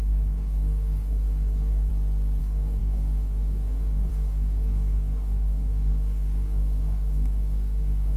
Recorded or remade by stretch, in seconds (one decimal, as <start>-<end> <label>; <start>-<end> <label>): 0.0-1.9 remade; 1.9-2.4 recorded; 2.4-8.2 remade